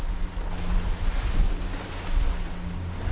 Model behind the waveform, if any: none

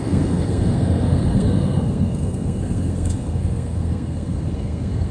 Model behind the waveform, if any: codec, SNAC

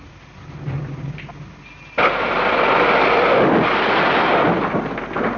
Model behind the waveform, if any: none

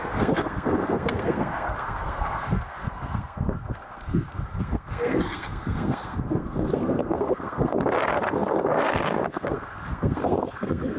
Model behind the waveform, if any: codec, SNAC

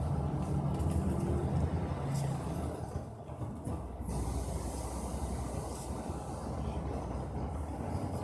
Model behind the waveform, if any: none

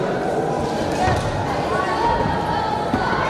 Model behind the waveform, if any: none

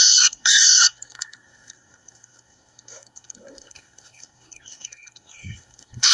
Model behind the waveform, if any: codec, SNAC